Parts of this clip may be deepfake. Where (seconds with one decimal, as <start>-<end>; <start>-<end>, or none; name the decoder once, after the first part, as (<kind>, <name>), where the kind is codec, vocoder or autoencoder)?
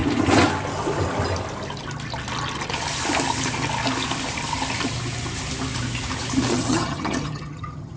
6.5-8.0 (vocoder, HiFi-GAN)